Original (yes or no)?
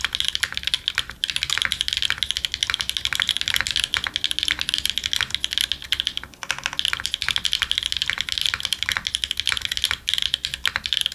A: yes